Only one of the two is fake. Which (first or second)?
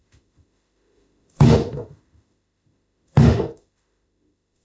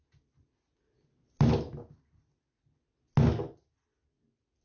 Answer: first